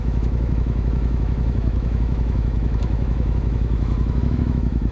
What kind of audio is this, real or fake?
fake